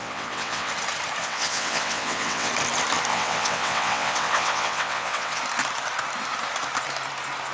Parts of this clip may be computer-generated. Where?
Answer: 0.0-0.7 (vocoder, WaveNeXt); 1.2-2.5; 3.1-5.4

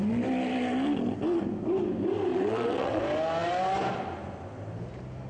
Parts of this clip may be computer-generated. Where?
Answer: 2.3-3.0 (vocoder, WaveNeXt)